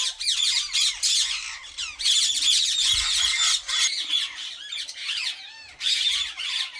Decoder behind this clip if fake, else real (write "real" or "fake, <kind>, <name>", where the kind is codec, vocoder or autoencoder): real